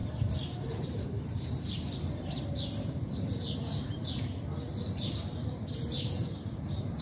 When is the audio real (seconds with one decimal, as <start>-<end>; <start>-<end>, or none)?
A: 0.0-0.6